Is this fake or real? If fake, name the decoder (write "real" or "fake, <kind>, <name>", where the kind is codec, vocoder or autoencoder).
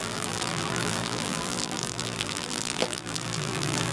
fake, vocoder, BigVGAN v2